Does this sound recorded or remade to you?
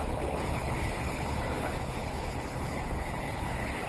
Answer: remade